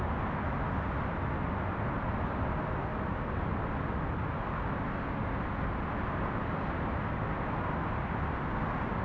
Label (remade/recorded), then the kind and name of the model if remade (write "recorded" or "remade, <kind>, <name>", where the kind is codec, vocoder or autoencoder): recorded